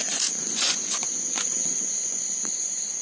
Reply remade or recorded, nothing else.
remade